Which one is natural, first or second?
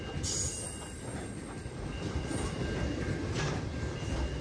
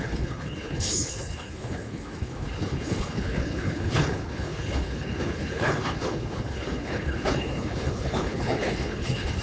first